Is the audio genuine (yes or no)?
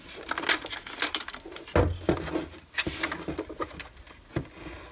yes